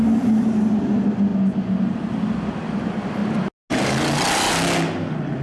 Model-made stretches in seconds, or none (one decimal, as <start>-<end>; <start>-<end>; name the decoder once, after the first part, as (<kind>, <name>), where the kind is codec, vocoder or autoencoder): none